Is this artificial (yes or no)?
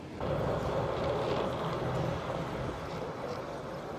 no